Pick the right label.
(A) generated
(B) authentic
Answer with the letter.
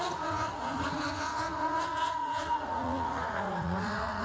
A